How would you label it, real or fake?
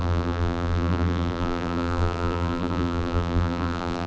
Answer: fake